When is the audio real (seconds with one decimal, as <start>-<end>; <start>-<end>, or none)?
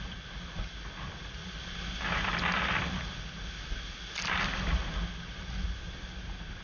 0.0-6.6